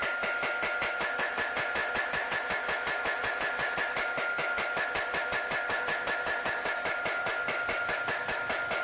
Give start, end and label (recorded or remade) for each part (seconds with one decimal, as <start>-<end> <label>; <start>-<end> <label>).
0.0-7.3 recorded; 7.3-8.0 remade; 8.0-8.8 recorded